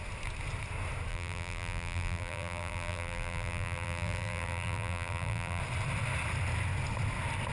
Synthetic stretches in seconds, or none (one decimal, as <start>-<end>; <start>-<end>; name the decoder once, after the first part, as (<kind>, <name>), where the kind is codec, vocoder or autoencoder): 1.1-5.6 (vocoder, BigVGAN v2)